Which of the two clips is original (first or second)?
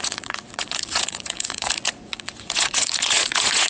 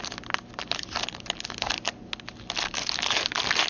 second